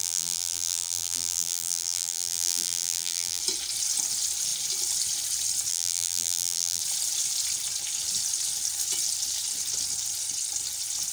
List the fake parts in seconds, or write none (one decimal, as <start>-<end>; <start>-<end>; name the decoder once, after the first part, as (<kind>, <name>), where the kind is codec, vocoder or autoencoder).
0.0-3.4 (vocoder, BigVGAN v2); 5.7-6.8